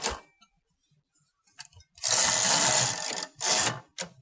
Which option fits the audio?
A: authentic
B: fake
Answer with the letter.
A